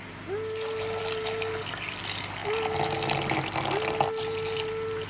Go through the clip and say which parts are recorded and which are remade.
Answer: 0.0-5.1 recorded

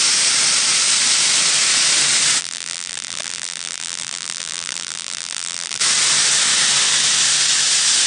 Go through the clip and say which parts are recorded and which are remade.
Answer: 0.0-2.4 recorded; 2.4-5.8 remade; 5.8-8.1 recorded

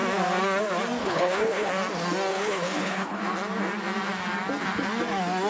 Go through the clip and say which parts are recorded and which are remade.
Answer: 0.0-1.0 recorded; 1.0-1.7 remade; 1.7-2.3 recorded; 2.3-3.2 remade; 3.2-5.5 recorded